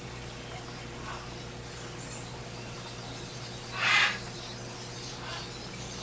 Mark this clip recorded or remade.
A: recorded